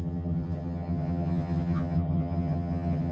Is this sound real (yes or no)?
no